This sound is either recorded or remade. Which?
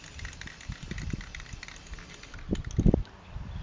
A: recorded